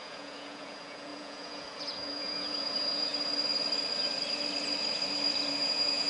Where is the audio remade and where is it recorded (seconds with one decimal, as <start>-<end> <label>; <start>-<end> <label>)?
0.0-3.1 remade; 3.1-5.5 recorded; 5.5-6.1 remade